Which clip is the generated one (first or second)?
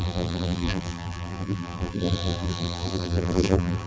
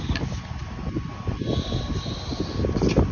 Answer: first